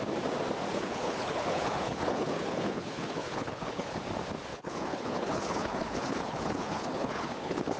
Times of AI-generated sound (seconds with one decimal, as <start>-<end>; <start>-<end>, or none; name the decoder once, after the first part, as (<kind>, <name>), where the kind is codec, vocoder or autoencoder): 0.7-4.0 (codec, HILCodec); 4.5-7.8